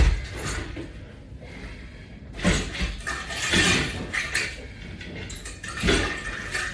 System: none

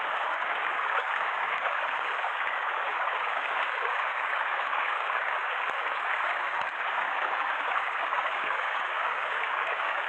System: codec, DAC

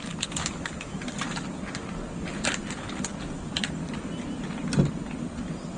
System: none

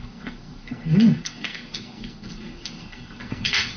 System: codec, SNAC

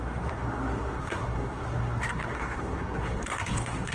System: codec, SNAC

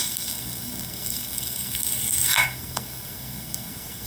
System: codec, SNAC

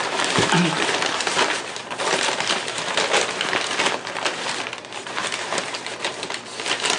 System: none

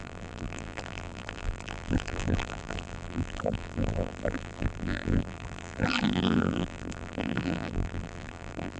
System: vocoder, BigVGAN v2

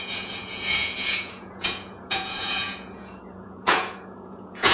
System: vocoder, Vocos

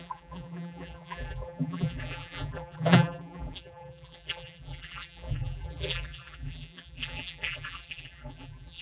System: vocoder, BigVGAN v2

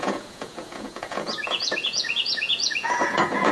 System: vocoder, Vocos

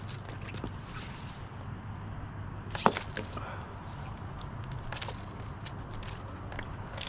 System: none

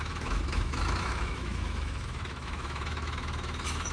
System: autoencoder, DAC-VAE